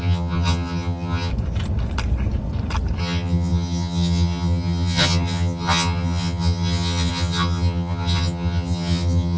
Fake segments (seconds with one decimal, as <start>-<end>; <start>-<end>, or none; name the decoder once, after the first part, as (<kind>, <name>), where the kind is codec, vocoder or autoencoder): 0.0-1.3 (vocoder, HiFi-GAN); 3.0-9.4